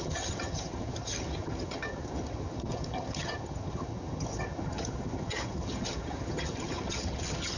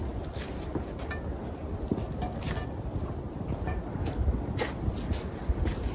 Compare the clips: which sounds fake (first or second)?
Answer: first